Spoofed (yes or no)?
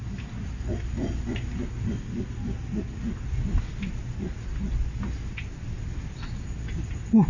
no